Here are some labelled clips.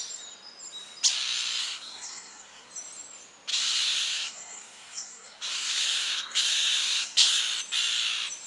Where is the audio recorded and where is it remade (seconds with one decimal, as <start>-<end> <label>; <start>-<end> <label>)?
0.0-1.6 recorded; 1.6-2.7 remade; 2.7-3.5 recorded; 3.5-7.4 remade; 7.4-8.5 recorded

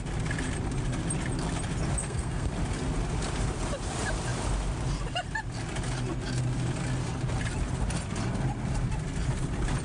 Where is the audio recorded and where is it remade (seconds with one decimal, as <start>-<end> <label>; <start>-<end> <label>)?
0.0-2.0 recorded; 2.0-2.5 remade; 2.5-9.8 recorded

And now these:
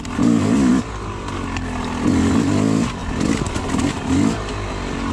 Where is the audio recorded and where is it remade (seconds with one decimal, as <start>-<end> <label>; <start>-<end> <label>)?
0.0-5.1 recorded